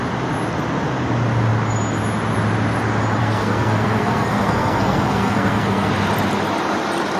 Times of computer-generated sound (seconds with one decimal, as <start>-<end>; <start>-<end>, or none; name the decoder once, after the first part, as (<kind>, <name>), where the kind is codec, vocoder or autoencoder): 3.2-5.9 (codec, SNAC)